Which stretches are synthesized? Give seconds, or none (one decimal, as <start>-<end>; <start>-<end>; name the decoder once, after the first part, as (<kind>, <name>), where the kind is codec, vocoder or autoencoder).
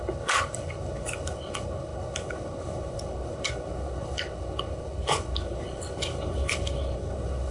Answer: 0.0-7.5 (codec, HILCodec)